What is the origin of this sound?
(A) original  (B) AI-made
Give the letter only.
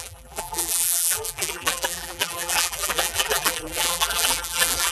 B